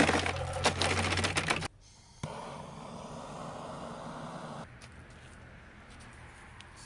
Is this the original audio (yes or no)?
yes